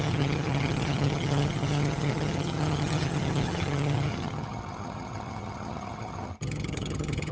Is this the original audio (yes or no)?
no